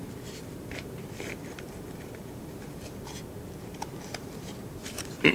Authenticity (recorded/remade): remade